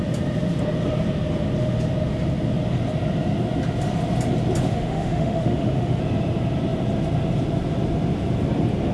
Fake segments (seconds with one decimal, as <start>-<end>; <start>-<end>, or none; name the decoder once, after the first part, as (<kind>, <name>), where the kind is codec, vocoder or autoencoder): 4.7-6.0 (autoencoder, DAC-VAE)